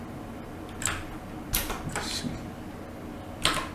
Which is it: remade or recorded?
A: recorded